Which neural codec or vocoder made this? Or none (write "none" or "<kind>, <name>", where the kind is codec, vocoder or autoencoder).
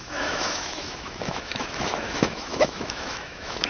autoencoder, DAC-VAE